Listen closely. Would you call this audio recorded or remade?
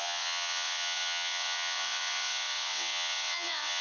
remade